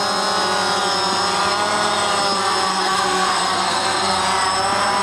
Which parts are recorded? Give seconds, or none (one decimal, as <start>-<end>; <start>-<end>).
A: 0.0-2.7; 4.2-5.0